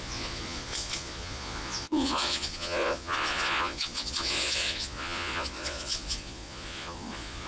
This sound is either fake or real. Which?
fake